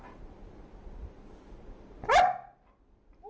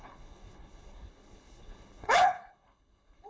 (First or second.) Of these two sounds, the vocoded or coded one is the second